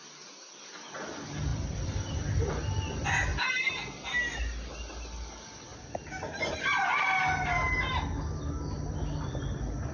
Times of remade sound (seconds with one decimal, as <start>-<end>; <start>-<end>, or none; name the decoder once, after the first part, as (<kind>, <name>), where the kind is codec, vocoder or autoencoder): 1.5-2.5 (vocoder, BigVGAN v2); 3.3-4.0